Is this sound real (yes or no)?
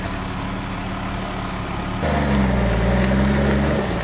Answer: yes